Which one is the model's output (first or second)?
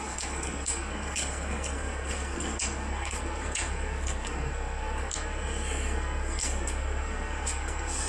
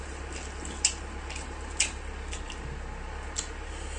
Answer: first